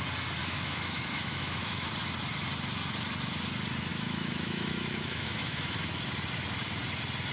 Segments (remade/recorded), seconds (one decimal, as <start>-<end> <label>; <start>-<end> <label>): 0.0-0.4 recorded; 0.4-1.9 remade; 1.9-3.9 recorded; 3.9-5.8 remade; 5.8-7.3 recorded